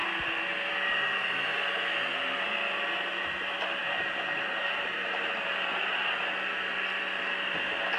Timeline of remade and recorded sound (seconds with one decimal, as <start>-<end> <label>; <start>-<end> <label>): 0.0-3.8 recorded; 3.8-5.2 remade; 5.2-8.0 recorded